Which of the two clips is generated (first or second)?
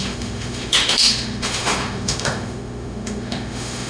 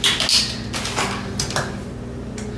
first